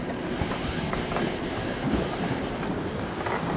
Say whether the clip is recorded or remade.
recorded